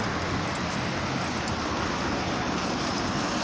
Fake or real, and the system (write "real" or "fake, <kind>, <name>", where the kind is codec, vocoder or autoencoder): real